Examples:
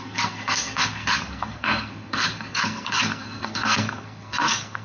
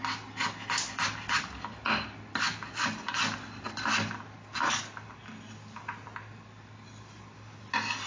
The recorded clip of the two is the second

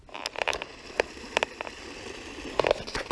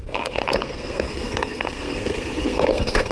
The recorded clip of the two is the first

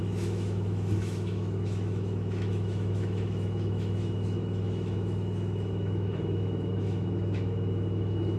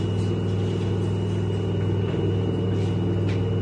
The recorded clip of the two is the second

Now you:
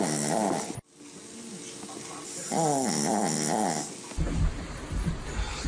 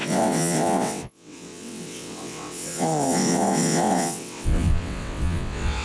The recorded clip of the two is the first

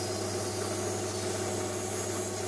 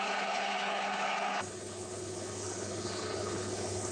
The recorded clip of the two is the first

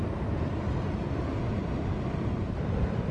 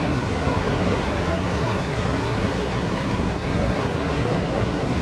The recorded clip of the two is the first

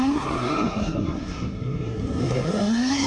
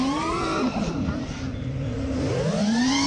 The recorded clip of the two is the second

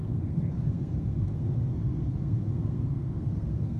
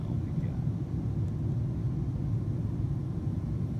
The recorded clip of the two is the second